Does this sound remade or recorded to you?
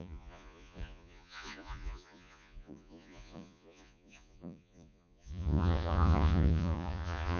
remade